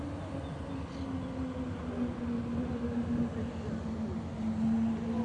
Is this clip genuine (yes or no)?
yes